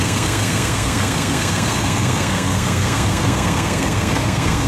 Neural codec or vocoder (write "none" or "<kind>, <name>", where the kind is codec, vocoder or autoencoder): codec, SNAC